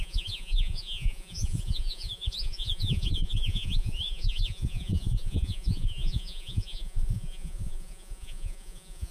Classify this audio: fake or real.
fake